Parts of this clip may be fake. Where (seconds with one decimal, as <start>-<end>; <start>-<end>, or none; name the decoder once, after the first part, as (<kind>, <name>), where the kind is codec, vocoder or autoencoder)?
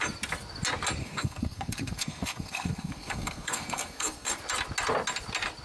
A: 1.0-4.4 (codec, SNAC)